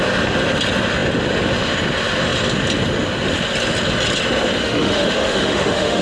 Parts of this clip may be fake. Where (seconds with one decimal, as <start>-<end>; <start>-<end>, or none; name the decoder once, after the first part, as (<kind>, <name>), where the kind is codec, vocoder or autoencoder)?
4.6-6.0 (autoencoder, DAC-VAE)